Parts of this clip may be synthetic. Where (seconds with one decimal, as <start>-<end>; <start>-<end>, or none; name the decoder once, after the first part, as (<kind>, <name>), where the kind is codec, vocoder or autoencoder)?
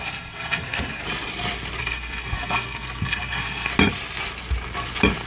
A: 0.0-1.0 (codec, SNAC); 1.8-3.7